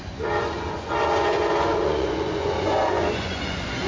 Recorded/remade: remade